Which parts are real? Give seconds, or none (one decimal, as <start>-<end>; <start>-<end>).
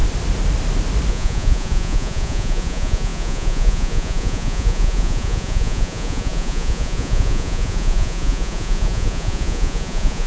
0.0-1.1